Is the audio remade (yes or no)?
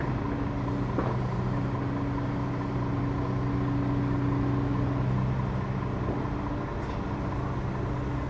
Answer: no